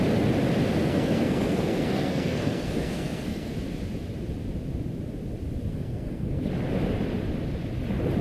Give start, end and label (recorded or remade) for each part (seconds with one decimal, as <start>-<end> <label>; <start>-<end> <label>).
0.0-0.8 recorded; 0.8-3.5 remade; 3.5-5.7 recorded; 5.7-6.5 remade; 6.5-8.2 recorded